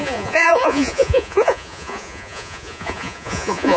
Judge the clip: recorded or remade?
remade